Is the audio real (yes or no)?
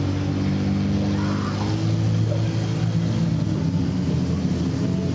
yes